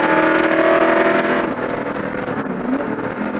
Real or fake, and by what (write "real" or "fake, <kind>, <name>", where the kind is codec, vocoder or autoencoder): real